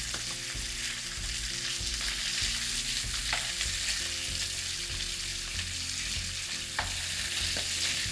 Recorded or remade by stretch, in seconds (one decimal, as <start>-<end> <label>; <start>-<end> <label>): 0.0-8.1 recorded